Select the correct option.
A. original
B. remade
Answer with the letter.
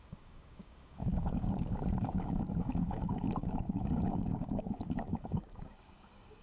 B